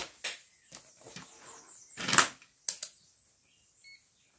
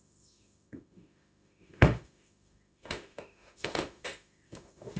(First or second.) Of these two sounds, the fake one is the second